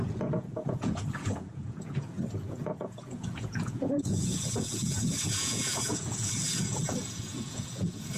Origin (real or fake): fake